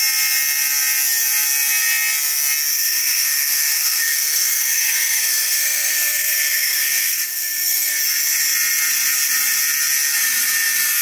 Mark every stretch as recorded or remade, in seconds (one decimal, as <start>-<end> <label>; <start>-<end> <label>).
0.0-2.7 recorded; 2.7-7.9 remade; 7.9-11.0 recorded